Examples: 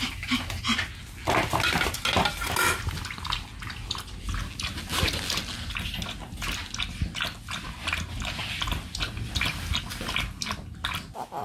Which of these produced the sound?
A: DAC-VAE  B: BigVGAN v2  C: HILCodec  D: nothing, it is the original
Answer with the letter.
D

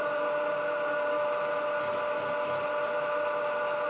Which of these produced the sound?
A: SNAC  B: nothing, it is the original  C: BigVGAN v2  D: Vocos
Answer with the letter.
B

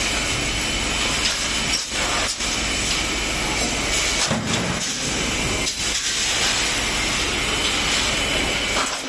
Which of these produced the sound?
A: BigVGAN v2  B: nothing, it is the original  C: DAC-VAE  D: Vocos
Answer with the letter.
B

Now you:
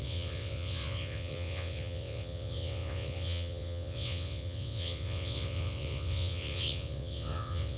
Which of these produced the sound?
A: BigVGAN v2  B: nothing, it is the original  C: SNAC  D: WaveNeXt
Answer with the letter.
D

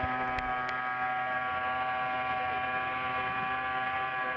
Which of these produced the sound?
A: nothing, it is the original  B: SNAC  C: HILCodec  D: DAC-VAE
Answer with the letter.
A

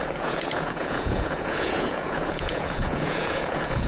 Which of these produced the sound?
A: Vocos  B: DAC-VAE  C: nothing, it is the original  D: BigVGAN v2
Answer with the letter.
A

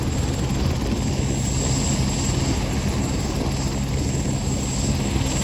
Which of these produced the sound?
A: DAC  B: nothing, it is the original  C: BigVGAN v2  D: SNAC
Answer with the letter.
B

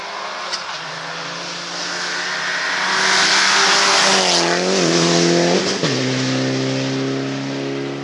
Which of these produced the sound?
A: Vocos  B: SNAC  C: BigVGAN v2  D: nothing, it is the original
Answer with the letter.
D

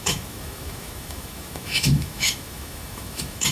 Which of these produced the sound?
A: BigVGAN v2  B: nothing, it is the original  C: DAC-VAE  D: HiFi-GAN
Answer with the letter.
C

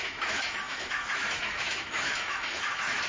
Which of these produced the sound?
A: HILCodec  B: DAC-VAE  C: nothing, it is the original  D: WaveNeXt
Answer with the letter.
B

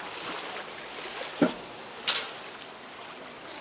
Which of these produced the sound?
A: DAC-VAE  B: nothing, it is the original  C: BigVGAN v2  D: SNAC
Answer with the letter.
B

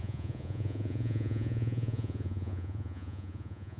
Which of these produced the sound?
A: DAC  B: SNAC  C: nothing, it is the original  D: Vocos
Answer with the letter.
D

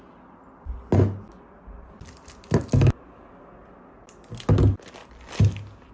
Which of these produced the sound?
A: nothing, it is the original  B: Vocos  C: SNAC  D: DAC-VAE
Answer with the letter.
A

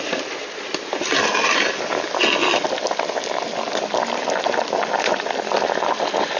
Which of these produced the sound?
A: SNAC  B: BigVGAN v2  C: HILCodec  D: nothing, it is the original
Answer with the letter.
D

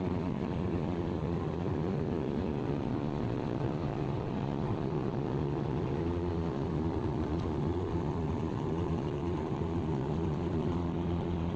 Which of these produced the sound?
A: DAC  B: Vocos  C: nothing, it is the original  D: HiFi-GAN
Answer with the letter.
B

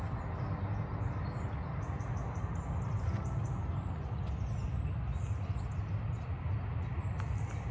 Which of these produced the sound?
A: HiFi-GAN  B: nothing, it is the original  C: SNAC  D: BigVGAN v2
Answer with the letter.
B